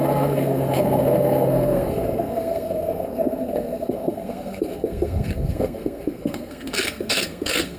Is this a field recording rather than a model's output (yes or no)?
no